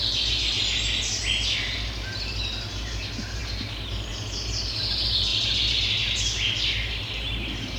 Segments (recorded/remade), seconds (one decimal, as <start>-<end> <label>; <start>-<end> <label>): 0.0-7.8 recorded